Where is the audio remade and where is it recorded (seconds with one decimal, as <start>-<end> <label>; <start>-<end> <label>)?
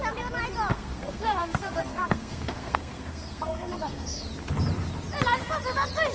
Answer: 0.0-0.7 recorded; 0.7-4.3 remade; 4.3-6.1 recorded